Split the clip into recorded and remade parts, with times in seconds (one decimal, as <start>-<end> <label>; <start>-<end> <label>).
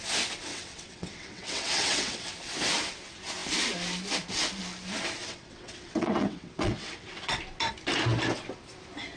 0.0-0.5 recorded; 0.5-2.3 remade; 2.3-5.2 recorded; 5.2-7.4 remade; 7.4-9.2 recorded